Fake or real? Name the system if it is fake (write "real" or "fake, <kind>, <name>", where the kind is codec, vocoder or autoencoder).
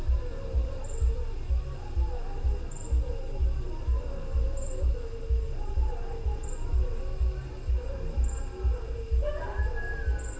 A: real